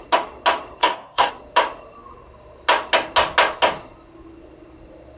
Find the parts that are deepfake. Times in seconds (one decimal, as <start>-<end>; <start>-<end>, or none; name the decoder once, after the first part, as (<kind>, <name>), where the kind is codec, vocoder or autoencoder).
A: 0.8-1.3 (codec, DAC)

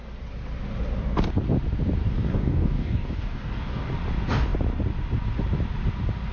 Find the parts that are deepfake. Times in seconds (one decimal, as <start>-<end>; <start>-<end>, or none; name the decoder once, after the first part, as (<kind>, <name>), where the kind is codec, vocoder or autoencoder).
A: 2.0-3.9 (codec, DAC)

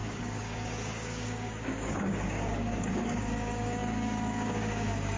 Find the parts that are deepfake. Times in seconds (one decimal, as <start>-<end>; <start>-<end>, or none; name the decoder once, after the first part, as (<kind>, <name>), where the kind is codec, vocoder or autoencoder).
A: 0.0-5.2 (codec, DAC)